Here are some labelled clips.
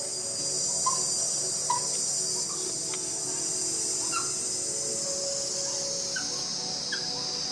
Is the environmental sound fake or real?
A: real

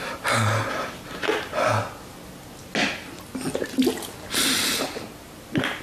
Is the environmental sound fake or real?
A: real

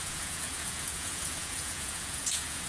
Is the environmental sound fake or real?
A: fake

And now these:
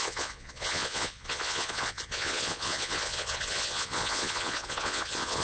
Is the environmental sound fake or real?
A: fake